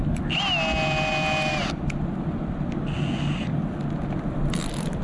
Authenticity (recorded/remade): recorded